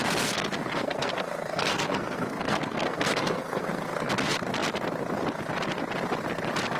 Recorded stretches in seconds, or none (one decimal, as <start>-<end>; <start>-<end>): 4.1-6.8